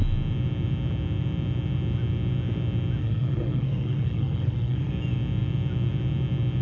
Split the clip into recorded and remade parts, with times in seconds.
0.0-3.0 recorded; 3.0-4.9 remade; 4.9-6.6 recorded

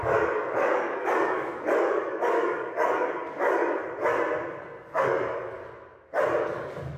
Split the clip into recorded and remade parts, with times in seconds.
0.0-3.8 remade; 3.8-4.8 recorded; 4.8-5.6 remade; 5.6-6.4 recorded; 6.4-7.0 remade

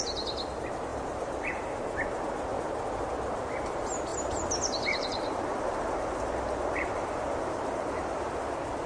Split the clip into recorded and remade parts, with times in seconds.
0.0-0.9 recorded; 0.9-1.6 remade; 1.6-4.1 recorded; 4.1-8.3 remade; 8.3-8.9 recorded

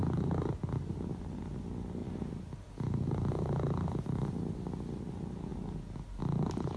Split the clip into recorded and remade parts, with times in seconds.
0.0-6.8 recorded

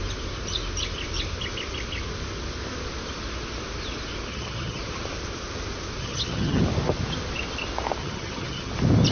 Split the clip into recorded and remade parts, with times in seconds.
0.0-4.3 recorded; 4.3-4.8 remade; 4.8-6.0 recorded; 6.0-6.6 remade; 6.6-8.0 recorded; 8.0-8.7 remade; 8.7-9.1 recorded